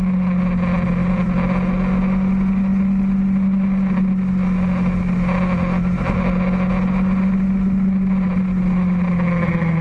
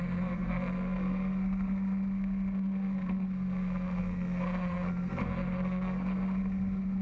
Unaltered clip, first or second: first